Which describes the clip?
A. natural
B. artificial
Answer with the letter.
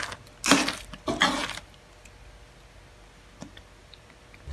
A